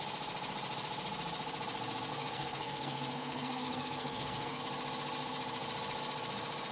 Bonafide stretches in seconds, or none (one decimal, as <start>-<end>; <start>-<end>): 0.0-2.1; 4.6-6.7